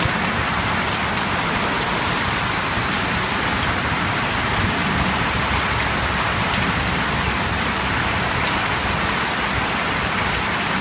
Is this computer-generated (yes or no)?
no